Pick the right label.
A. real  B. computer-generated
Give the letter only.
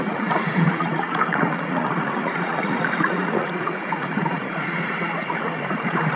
B